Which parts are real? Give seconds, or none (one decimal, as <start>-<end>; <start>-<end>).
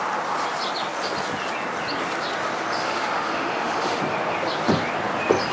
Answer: 0.0-2.8; 4.0-5.5